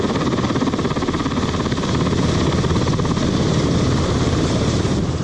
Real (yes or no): yes